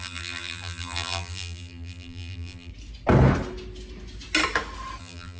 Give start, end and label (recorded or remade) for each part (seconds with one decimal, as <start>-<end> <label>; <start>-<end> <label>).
0.0-2.7 remade; 2.7-5.0 recorded; 5.0-5.4 remade